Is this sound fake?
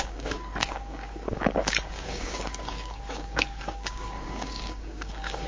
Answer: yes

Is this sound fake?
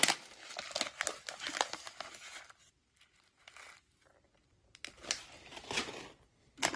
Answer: no